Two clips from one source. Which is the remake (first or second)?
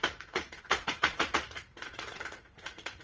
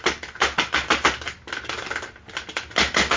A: first